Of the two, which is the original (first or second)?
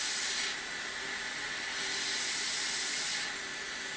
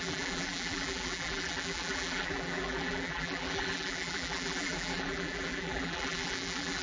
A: first